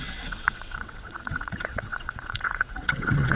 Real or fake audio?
fake